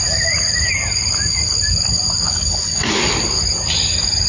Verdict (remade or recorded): recorded